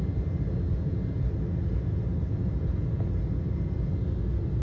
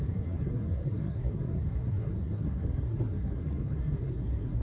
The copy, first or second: second